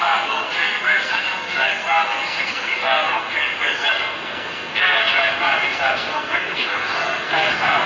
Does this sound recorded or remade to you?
remade